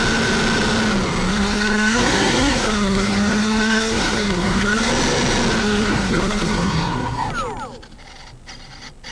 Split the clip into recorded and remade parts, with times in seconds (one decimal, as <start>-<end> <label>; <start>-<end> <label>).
0.0-1.3 recorded; 1.3-4.9 remade; 4.9-5.6 recorded; 5.6-7.3 remade; 7.3-9.1 recorded

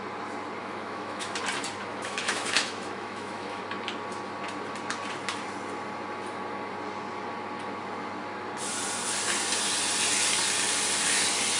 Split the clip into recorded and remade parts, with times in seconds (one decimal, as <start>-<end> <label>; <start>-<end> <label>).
0.0-0.6 recorded; 0.6-1.4 remade; 1.4-1.8 recorded; 1.8-3.6 remade; 3.6-11.6 recorded

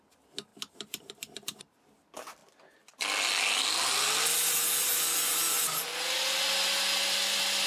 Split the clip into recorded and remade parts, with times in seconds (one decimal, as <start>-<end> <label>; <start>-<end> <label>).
0.0-0.5 recorded; 0.5-1.6 remade; 1.6-7.7 recorded

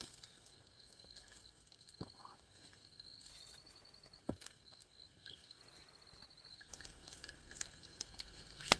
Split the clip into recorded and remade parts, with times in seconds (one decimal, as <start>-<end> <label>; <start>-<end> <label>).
0.0-3.3 remade; 3.3-4.2 recorded; 4.2-5.6 remade; 5.6-6.5 recorded; 6.5-8.8 remade

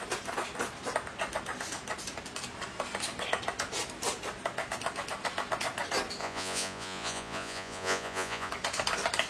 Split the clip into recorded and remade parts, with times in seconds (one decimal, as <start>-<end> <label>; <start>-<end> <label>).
0.0-6.2 recorded; 6.2-8.5 remade; 8.5-9.3 recorded